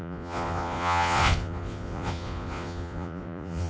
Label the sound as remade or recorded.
remade